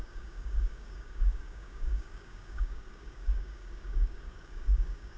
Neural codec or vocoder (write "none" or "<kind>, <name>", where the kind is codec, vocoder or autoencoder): codec, DAC